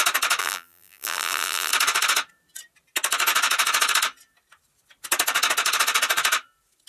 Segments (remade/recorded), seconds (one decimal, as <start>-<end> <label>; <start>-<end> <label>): 0.0-0.4 recorded; 0.4-1.7 remade; 1.7-6.9 recorded